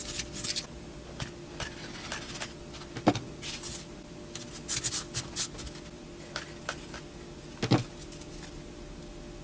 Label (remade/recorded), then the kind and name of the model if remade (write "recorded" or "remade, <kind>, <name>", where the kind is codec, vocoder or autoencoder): recorded